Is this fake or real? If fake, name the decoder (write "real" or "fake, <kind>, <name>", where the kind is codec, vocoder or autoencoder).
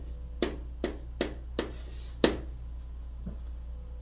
real